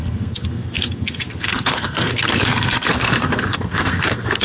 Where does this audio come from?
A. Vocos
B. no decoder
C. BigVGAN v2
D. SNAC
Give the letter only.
D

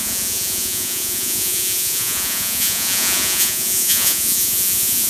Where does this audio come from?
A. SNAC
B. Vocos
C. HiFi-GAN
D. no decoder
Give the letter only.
B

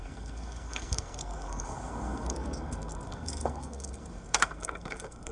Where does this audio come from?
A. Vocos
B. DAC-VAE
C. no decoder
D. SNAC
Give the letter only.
D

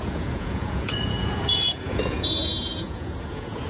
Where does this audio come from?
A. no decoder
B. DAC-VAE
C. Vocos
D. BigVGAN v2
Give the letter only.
C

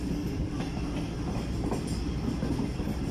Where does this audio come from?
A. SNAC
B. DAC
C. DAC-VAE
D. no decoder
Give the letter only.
D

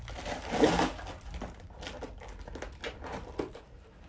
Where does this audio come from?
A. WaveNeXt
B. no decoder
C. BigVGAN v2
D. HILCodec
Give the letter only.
B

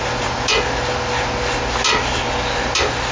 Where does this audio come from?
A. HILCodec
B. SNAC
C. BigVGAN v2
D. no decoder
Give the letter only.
D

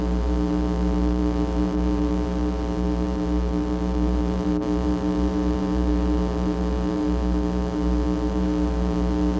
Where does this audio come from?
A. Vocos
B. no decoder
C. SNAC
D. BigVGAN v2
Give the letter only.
D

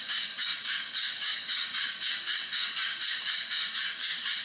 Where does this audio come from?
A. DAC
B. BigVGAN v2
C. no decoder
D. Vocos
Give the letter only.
A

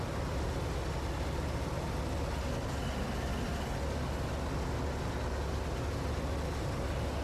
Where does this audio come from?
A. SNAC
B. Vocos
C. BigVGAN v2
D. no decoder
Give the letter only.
D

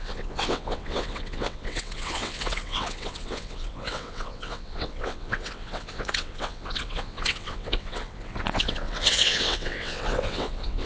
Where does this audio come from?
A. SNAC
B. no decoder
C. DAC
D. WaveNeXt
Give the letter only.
D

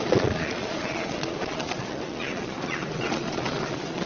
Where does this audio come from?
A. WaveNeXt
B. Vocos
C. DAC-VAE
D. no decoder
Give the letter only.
B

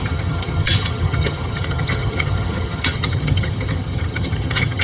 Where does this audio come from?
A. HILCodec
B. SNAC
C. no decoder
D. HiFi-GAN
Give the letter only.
D